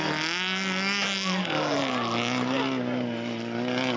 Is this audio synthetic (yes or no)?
no